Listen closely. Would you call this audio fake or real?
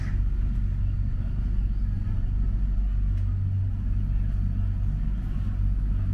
real